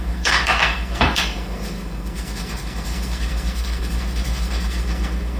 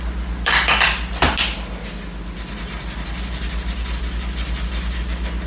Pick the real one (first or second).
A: second